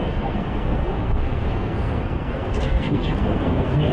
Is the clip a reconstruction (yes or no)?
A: yes